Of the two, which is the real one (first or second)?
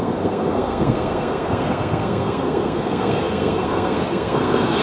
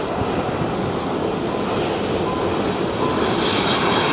second